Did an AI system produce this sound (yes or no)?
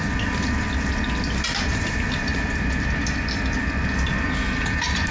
yes